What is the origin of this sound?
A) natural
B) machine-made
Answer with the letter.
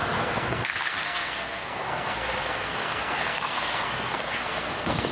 B